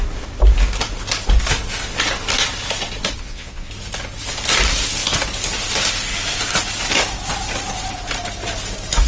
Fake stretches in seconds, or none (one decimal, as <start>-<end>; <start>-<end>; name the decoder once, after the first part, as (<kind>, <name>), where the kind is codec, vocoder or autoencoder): 3.2-3.7 (vocoder, Vocos)